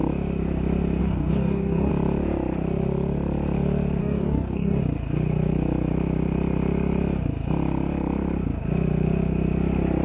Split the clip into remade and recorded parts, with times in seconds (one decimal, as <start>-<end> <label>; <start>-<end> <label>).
0.0-1.0 recorded; 1.0-1.9 remade; 1.9-4.0 recorded; 4.0-4.8 remade; 4.8-10.0 recorded